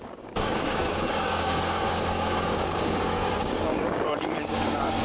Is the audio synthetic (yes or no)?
yes